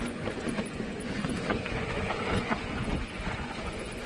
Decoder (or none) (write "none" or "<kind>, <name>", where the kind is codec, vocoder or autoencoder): vocoder, Vocos